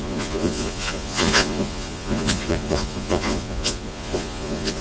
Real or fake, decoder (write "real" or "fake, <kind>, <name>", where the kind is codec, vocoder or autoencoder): fake, vocoder, Vocos